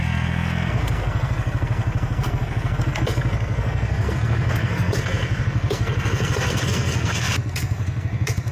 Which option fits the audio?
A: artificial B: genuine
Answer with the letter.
A